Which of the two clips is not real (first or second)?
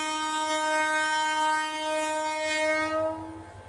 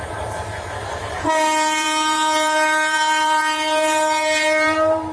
second